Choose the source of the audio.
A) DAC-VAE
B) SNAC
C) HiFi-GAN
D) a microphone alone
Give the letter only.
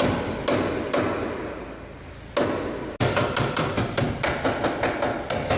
D